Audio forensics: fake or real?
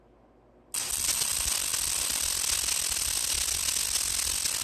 real